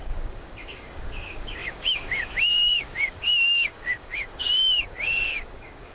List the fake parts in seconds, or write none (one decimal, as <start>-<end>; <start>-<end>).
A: 0.0-5.9